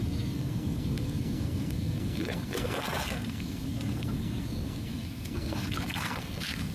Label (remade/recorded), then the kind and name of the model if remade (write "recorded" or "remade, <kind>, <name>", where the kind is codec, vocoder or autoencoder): remade, codec, SNAC